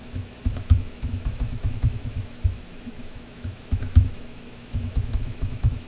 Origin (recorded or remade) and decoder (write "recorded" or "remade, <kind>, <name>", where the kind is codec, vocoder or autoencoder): remade, autoencoder, DAC-VAE